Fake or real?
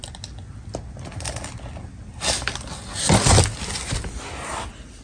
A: real